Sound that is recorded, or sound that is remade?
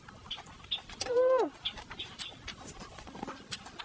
recorded